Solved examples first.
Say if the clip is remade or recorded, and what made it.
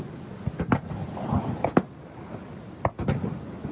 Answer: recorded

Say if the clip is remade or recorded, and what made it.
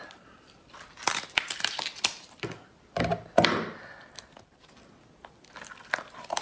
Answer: recorded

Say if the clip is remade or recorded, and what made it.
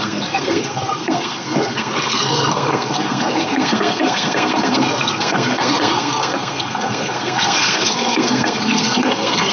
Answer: remade, codec, SNAC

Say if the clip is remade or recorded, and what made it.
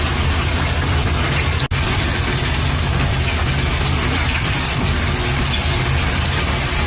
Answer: recorded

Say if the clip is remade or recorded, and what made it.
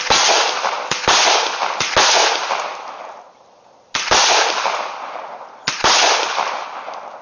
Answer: recorded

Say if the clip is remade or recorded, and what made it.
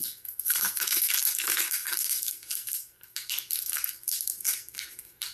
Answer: remade, codec, SNAC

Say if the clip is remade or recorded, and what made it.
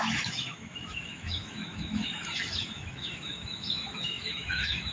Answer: remade, autoencoder, DAC-VAE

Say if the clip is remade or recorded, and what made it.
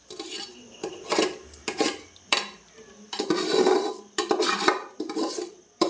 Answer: remade, vocoder, BigVGAN v2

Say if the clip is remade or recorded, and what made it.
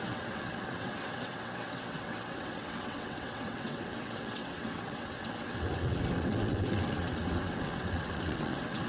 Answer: remade, vocoder, WaveNeXt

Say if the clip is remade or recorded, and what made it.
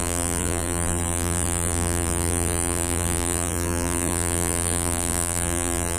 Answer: remade, vocoder, BigVGAN v2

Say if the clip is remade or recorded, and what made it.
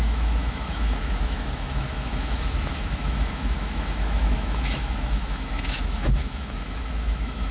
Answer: remade, autoencoder, DAC-VAE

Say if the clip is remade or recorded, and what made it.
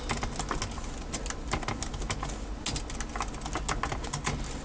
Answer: recorded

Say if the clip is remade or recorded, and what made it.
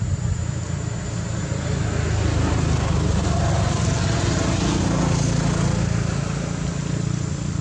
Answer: recorded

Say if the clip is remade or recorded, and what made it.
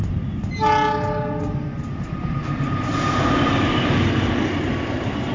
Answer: recorded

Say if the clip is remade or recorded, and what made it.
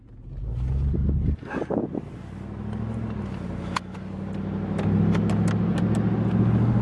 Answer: recorded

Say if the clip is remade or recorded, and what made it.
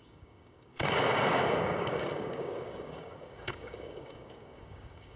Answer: remade, codec, DAC